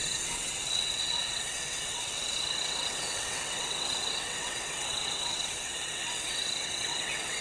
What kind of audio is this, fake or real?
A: fake